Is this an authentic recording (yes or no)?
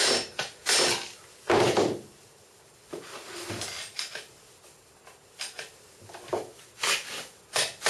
yes